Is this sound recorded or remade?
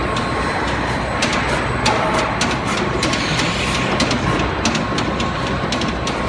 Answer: recorded